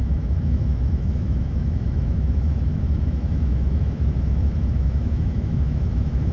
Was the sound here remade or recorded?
remade